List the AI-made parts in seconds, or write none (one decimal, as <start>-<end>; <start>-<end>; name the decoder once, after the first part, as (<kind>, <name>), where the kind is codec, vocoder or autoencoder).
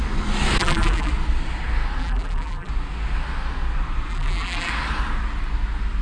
0.6-1.1 (vocoder, BigVGAN v2); 2.0-2.7; 4.1-4.7